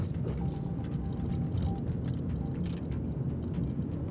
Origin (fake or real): real